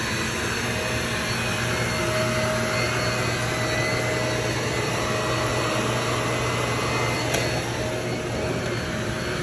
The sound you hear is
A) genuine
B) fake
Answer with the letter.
A